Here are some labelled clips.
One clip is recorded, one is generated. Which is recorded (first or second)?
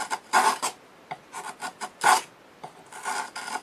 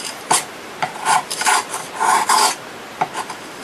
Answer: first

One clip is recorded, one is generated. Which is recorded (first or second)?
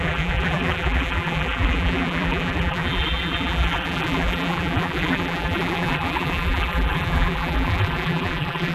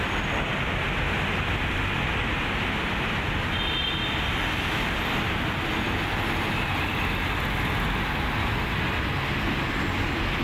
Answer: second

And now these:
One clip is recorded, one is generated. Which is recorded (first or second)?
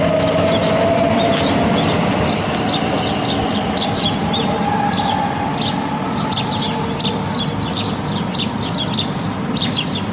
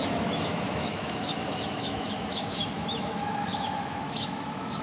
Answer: first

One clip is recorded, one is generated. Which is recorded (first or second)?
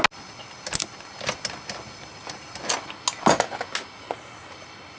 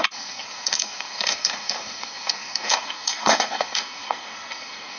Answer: first